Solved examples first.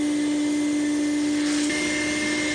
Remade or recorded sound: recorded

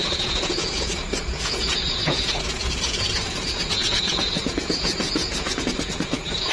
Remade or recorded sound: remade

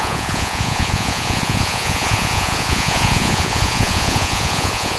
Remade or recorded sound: remade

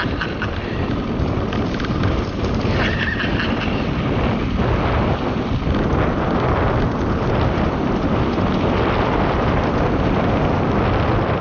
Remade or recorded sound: recorded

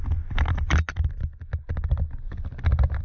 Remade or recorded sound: recorded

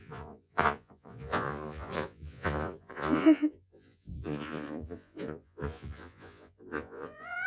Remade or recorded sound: remade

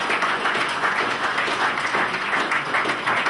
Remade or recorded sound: remade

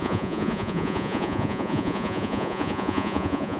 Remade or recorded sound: remade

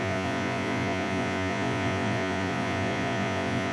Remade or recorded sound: remade